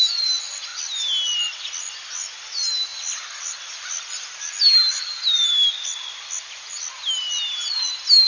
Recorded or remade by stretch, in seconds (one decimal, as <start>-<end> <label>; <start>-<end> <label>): 0.0-8.3 recorded